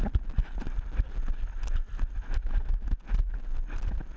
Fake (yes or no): no